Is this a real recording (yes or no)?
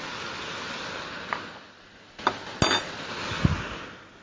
yes